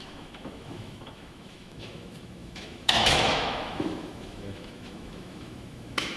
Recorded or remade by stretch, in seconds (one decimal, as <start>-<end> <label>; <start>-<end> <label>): 0.0-6.2 remade